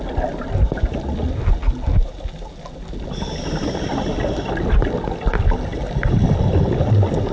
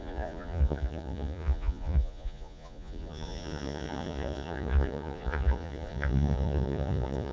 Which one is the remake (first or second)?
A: second